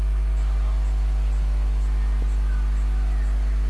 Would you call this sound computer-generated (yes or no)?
no